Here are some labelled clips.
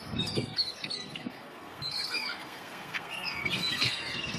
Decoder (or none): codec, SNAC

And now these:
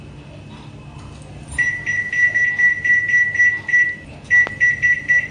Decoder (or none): none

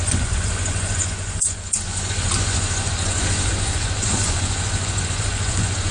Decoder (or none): vocoder, Vocos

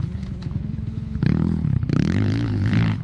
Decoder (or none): codec, HILCodec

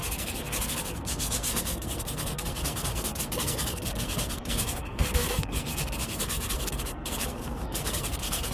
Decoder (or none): codec, SNAC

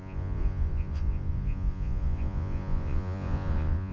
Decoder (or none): vocoder, Vocos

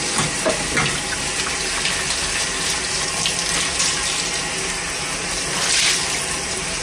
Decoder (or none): none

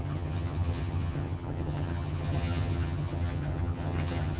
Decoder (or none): vocoder, HiFi-GAN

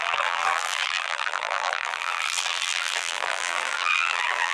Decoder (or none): vocoder, BigVGAN v2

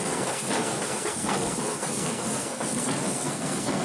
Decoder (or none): codec, SNAC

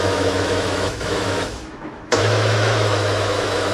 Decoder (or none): autoencoder, DAC-VAE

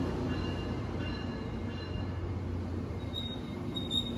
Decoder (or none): none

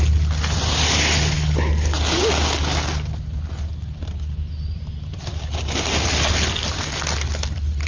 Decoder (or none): none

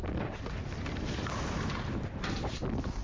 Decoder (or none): none